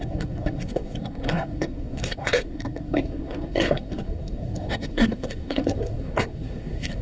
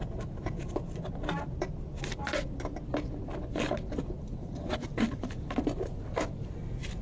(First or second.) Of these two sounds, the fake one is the first